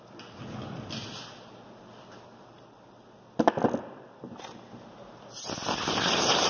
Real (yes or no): yes